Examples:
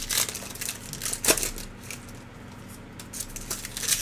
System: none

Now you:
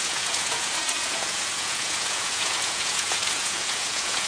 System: vocoder, Vocos